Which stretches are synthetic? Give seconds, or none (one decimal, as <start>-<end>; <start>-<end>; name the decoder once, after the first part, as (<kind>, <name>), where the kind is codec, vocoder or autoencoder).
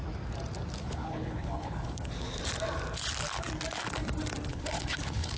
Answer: 0.8-2.4 (codec, HILCodec); 4.5-5.4